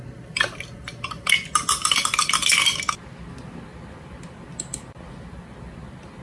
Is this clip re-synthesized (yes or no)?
no